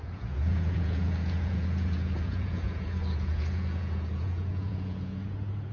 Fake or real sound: fake